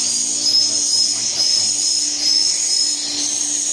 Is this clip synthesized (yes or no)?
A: no